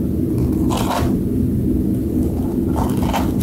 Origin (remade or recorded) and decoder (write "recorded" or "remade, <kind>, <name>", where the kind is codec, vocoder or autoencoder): recorded